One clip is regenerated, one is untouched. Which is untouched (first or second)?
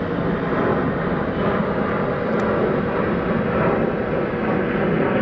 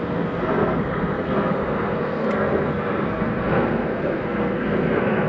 first